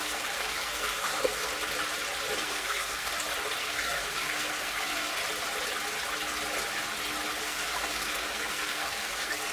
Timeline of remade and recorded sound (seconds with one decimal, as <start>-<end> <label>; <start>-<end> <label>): 0.0-1.5 remade; 1.5-2.4 recorded; 2.4-3.1 remade; 3.1-3.6 recorded; 3.6-5.2 remade; 5.2-7.4 recorded; 7.4-9.5 remade